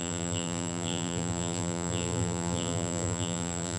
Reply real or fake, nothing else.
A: fake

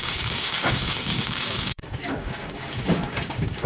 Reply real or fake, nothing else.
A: fake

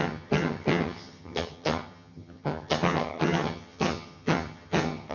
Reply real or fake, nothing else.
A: fake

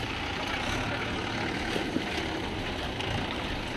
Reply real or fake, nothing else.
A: real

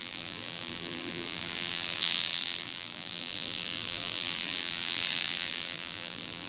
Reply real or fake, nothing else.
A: fake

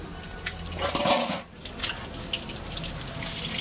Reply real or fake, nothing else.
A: real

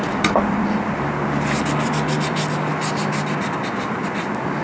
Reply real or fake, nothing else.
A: real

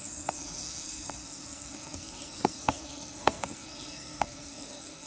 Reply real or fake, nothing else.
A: fake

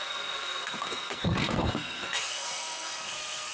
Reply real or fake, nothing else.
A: fake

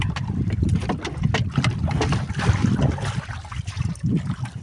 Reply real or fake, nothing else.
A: fake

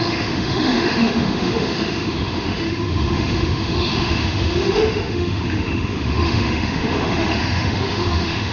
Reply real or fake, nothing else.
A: fake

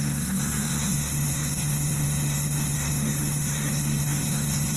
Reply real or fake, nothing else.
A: fake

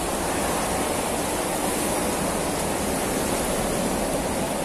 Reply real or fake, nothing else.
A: real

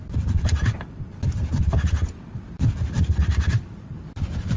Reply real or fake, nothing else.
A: real